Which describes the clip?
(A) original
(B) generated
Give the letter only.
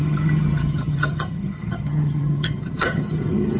B